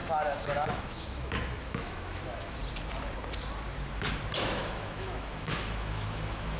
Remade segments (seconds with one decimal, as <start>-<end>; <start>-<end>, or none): 0.0-2.6; 4.4-6.6